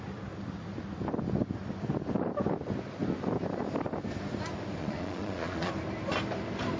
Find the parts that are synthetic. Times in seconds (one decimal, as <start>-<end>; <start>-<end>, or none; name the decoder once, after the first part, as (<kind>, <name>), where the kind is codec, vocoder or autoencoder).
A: 4.8-5.7 (vocoder, Vocos)